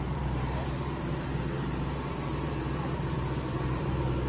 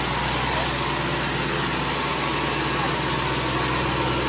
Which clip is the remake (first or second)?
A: first